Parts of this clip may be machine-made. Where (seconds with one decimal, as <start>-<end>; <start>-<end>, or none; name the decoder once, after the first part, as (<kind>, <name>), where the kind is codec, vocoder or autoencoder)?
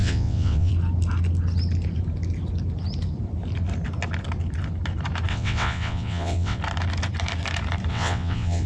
0.0-0.7 (vocoder, WaveNeXt); 5.3-6.6; 7.9-8.7